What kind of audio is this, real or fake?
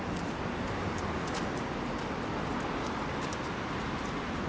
real